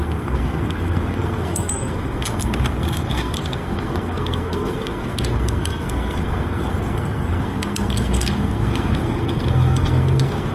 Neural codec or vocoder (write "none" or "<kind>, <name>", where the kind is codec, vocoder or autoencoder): codec, SNAC